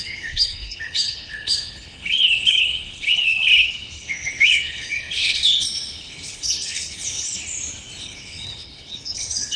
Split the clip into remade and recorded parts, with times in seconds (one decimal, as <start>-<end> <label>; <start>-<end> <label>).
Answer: 0.0-7.4 remade; 7.4-8.0 recorded; 8.0-9.6 remade